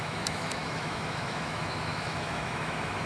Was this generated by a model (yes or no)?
yes